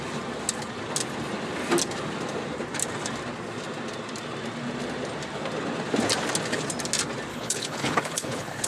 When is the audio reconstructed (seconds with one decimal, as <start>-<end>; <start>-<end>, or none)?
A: 7.3-8.7